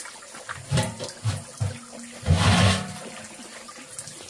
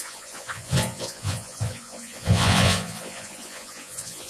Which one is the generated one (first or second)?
second